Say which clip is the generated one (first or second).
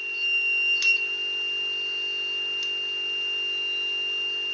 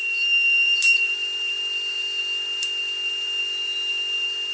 second